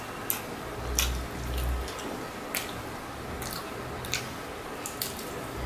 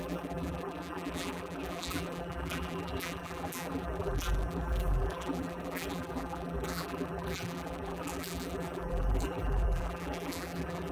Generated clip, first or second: second